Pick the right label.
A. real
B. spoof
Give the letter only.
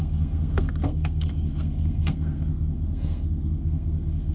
B